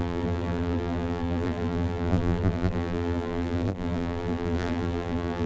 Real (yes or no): no